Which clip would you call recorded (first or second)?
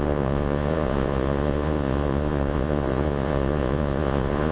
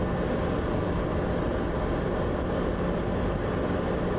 second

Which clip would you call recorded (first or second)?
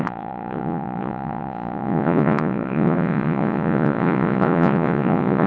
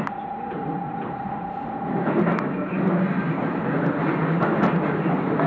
second